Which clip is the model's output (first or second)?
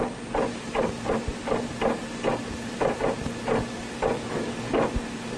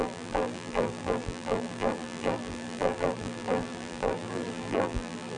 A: second